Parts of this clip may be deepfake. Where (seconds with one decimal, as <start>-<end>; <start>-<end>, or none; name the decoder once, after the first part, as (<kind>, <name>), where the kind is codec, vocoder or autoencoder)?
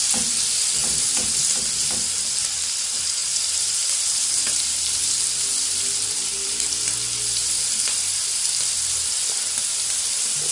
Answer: 0.8-1.7 (vocoder, BigVGAN v2); 3.2-4.7; 6.3-10.5